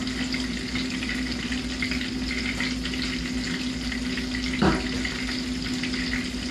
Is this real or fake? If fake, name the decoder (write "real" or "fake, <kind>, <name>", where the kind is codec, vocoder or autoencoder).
real